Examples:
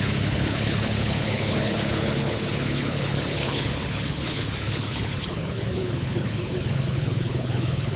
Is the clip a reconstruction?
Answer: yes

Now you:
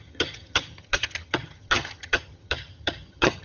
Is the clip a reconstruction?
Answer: yes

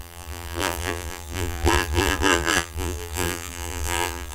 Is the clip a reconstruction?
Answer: yes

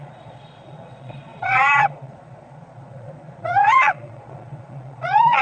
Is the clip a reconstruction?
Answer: yes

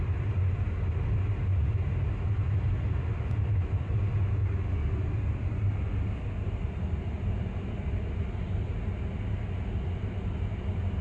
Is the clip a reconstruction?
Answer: no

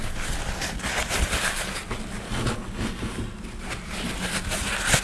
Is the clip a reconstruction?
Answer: no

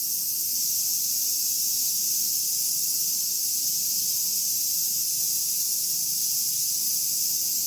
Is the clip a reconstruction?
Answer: yes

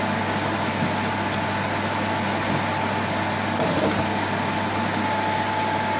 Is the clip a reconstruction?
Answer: no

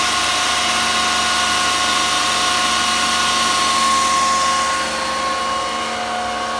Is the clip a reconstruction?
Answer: no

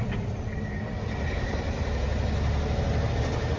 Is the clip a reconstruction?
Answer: no